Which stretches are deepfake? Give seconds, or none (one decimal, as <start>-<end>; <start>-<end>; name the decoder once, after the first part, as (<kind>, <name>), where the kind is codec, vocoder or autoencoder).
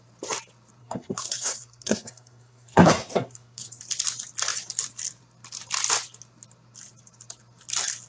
0.8-3.8 (codec, SNAC)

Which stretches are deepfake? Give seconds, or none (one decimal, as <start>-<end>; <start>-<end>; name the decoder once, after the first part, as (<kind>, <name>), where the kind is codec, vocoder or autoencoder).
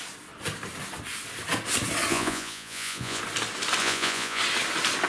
2.1-3.2 (vocoder, Vocos); 3.8-4.4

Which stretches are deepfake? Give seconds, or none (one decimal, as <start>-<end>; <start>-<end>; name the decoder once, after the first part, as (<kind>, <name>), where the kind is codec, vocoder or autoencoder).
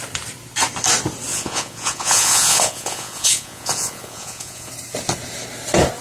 1.3-4.7 (vocoder, Vocos)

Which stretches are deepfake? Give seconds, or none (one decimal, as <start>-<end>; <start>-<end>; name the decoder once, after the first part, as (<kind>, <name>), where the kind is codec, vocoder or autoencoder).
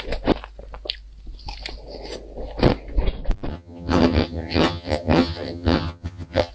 3.5-6.5 (vocoder, HiFi-GAN)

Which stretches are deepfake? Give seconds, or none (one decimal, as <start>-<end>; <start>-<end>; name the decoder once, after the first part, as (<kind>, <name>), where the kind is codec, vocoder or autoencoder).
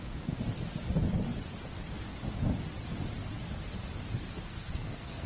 4.5-5.3 (codec, SNAC)